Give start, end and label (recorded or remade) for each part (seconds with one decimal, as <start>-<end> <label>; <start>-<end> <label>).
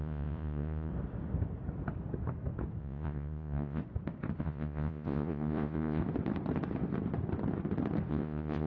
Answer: 0.0-0.9 remade; 0.9-2.8 recorded; 2.8-3.8 remade; 3.8-4.4 recorded; 4.4-6.0 remade; 6.0-8.1 recorded; 8.1-8.7 remade